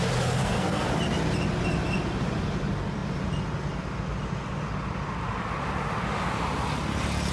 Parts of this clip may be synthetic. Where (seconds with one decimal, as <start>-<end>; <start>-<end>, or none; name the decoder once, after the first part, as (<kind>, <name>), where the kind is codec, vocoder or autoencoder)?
0.4-0.9 (codec, SNAC)

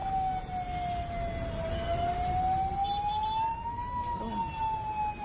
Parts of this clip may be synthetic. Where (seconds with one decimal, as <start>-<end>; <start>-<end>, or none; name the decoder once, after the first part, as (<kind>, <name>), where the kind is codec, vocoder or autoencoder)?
3.5-4.2 (autoencoder, DAC-VAE)

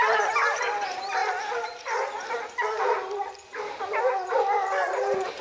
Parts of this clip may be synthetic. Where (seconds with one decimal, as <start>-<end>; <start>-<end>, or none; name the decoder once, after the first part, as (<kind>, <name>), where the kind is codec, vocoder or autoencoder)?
none